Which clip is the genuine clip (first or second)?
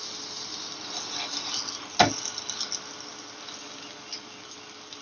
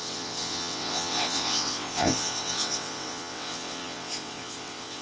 first